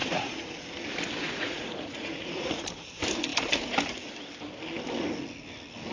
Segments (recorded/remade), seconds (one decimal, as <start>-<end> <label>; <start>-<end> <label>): 0.0-0.5 remade; 0.5-1.2 recorded; 1.2-2.6 remade; 2.6-5.9 recorded